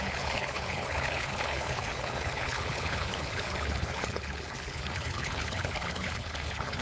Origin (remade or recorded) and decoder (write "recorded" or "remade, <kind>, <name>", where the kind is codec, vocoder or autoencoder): remade, codec, HILCodec